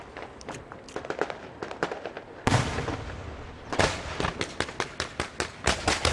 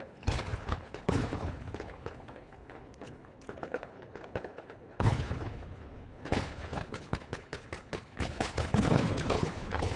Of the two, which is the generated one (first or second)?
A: second